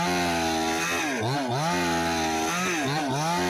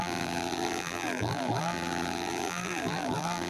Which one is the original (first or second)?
first